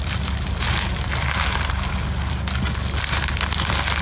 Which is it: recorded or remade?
recorded